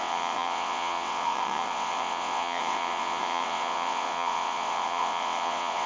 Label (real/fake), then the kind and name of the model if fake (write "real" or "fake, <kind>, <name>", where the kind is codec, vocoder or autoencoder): fake, vocoder, WaveNeXt